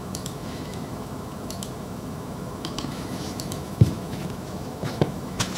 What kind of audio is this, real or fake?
fake